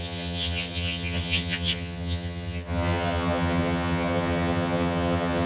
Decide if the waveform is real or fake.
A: fake